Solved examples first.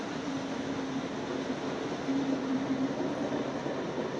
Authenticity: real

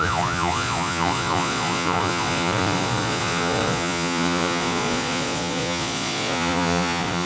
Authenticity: fake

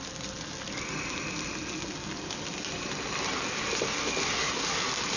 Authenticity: real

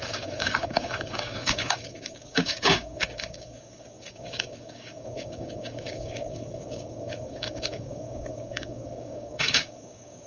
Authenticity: fake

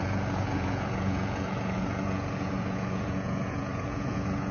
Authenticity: fake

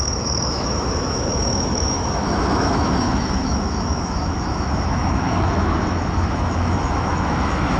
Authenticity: fake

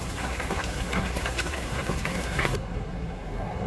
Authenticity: fake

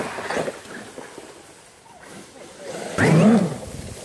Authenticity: real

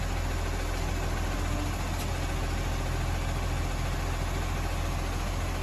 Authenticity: real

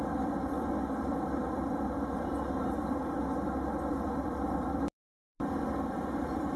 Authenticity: fake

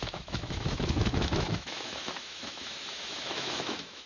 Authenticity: fake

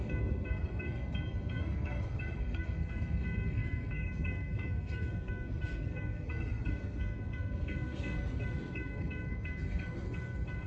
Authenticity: fake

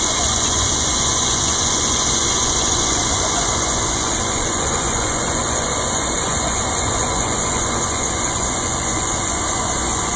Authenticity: fake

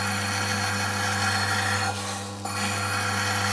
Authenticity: real